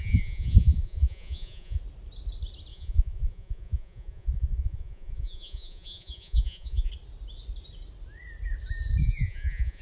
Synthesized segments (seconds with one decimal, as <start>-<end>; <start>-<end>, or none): 0.0-1.8; 2.7-6.9; 9.0-9.8